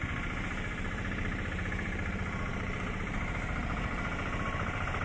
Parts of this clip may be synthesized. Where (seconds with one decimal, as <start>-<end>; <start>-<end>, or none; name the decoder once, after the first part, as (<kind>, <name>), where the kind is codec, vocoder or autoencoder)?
0.0-5.0 (vocoder, BigVGAN v2)